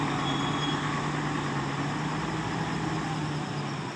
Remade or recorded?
recorded